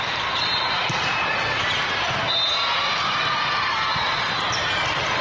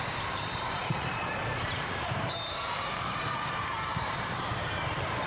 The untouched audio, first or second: first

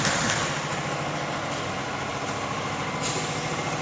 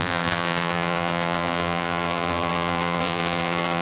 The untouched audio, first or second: first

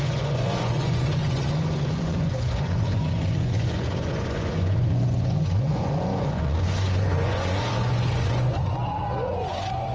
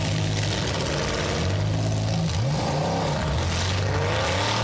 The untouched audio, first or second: second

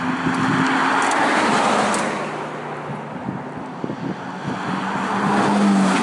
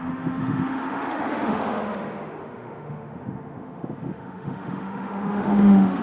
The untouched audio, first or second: first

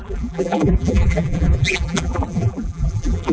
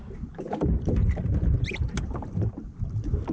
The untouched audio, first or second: second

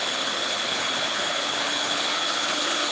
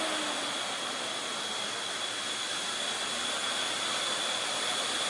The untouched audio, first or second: second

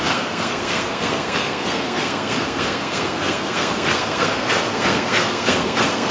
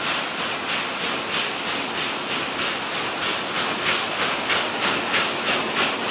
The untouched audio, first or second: second